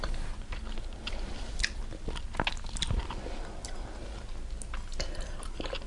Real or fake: real